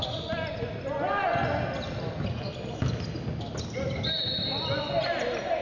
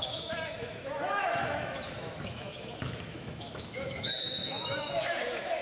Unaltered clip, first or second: first